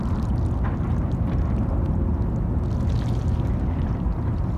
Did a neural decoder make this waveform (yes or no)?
no